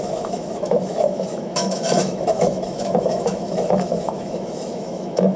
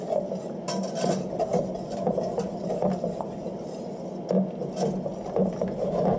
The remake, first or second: first